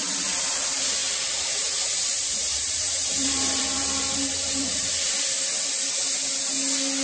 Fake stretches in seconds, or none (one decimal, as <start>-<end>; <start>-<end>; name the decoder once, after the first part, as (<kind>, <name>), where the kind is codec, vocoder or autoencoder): 1.0-5.2 (vocoder, BigVGAN v2)

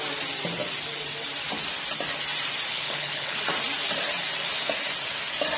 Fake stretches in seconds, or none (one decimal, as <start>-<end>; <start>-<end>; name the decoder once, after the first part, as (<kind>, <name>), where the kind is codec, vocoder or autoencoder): 2.7-3.4 (codec, HILCodec)

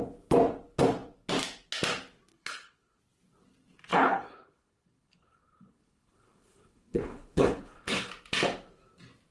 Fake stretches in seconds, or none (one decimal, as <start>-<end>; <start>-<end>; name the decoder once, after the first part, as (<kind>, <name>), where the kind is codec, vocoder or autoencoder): 2.3-3.0 (codec, HILCodec); 3.9-8.1

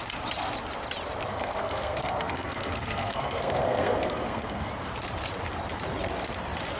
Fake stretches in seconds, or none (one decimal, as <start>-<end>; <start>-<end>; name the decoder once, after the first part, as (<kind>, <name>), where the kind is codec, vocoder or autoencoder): 1.3-4.7 (codec, SNAC)

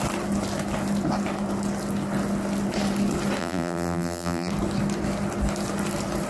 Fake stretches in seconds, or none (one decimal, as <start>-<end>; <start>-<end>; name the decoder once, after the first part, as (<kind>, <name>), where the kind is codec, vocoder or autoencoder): 3.4-4.5 (vocoder, BigVGAN v2)

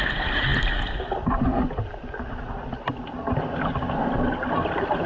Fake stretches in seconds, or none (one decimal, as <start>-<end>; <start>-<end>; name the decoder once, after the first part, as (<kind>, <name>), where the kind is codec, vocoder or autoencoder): none

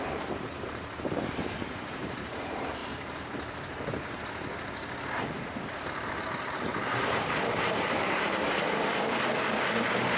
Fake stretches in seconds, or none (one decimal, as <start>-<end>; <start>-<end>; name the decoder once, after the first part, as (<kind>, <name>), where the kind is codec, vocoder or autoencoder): 0.0-2.8 (vocoder, BigVGAN v2); 5.7-6.7; 7.6-8.9; 9.5-10.2